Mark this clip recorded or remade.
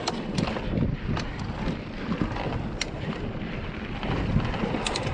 recorded